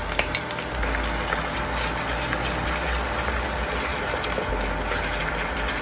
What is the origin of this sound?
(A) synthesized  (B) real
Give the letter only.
B